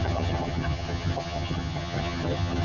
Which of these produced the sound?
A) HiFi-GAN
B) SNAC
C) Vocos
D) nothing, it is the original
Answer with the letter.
A